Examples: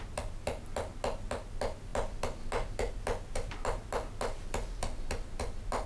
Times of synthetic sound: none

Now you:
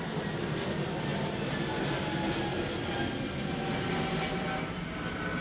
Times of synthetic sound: none

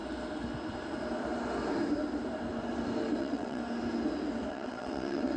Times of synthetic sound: 3.2-3.6; 4.5-5.4

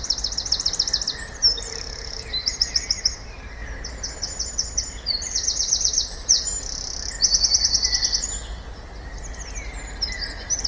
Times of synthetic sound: none

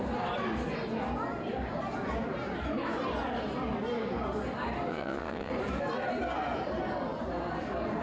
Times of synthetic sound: 4.9-5.5